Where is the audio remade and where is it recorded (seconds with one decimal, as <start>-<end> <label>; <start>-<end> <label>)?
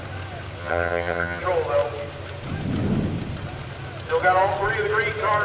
0.0-0.6 recorded; 0.6-1.4 remade; 1.4-5.4 recorded